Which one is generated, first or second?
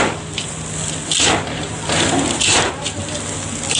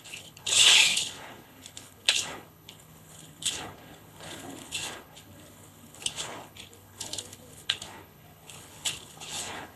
second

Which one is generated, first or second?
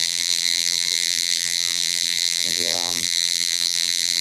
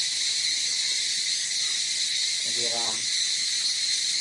first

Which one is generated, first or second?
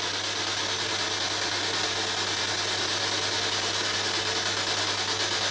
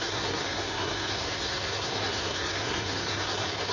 second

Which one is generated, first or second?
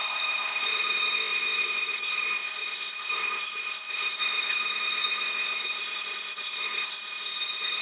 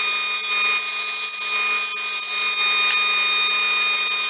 first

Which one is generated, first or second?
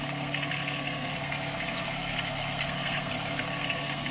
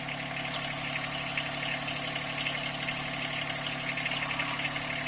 first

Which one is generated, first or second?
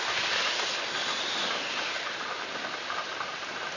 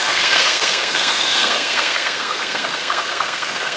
second